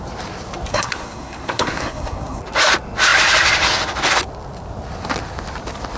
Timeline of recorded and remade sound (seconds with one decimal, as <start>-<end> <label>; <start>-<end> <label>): 0.0-0.7 recorded; 0.7-2.4 remade; 2.4-6.0 recorded